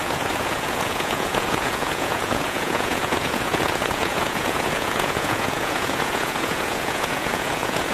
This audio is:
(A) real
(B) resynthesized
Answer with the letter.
B